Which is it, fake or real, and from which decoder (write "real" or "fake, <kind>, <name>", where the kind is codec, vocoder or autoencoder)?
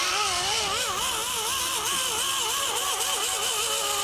real